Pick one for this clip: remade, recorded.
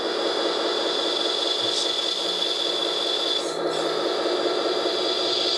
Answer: recorded